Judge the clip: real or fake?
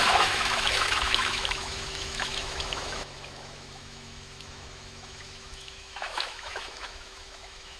fake